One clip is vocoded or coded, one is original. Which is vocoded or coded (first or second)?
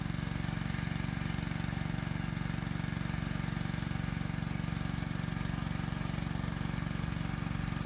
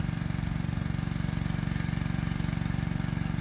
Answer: second